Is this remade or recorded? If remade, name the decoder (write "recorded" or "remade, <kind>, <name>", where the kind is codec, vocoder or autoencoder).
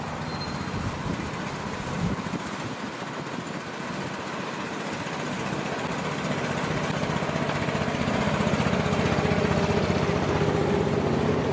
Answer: recorded